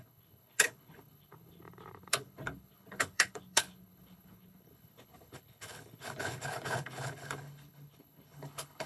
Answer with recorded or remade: remade